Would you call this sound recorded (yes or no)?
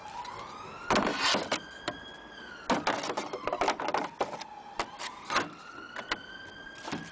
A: yes